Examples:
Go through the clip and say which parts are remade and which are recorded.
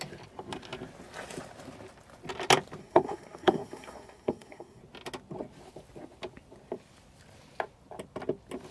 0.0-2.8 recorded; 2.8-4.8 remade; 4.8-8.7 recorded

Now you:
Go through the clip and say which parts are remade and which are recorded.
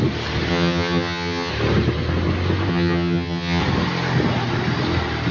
0.0-0.5 recorded; 0.5-1.5 remade; 1.5-2.7 recorded; 2.7-3.6 remade; 3.6-5.3 recorded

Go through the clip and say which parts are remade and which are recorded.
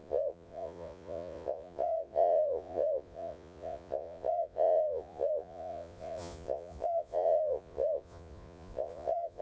0.0-9.4 remade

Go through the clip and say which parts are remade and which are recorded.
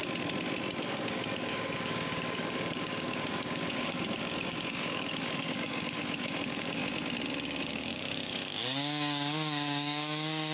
0.0-0.8 recorded; 0.8-6.8 remade; 6.8-7.6 recorded; 7.6-10.5 remade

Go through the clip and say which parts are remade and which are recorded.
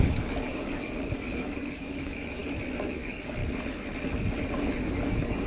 0.0-2.4 remade; 2.4-2.9 recorded; 2.9-3.4 remade; 3.4-4.8 recorded; 4.8-5.5 remade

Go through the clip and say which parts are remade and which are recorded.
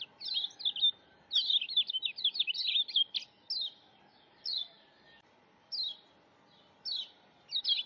0.0-4.1 recorded; 4.1-5.0 remade; 5.0-7.9 recorded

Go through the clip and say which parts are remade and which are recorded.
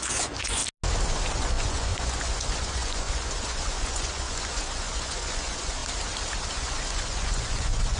0.0-0.6 remade; 0.6-1.4 recorded; 1.4-5.8 remade; 5.8-6.5 recorded; 6.5-8.0 remade